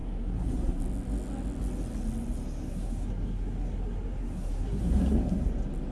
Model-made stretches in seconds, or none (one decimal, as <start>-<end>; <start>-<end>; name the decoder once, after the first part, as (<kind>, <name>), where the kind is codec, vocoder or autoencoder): 0.0-0.8 (codec, SNAC); 2.7-5.5